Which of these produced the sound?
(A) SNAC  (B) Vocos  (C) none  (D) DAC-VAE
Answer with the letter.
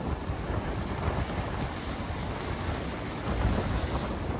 C